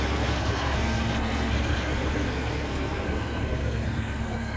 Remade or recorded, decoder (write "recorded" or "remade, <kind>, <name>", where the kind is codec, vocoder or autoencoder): remade, codec, SNAC